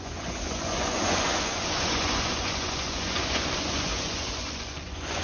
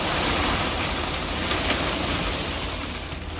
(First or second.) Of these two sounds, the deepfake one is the first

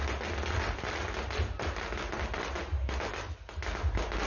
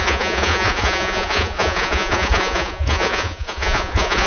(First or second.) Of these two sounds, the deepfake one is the second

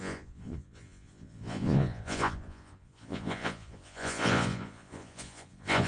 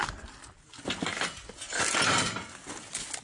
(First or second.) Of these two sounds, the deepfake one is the first